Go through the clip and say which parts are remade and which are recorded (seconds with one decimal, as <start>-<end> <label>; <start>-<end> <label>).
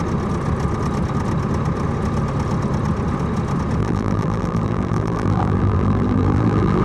0.0-3.8 recorded; 3.8-6.8 remade